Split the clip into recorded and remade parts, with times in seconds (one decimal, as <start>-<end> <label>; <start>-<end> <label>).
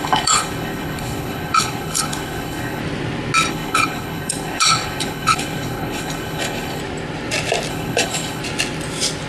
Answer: 0.0-2.8 remade; 2.8-3.5 recorded; 3.5-6.8 remade; 6.8-7.7 recorded; 7.7-8.4 remade; 8.4-9.3 recorded